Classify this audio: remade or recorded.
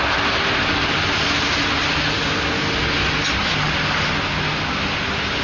recorded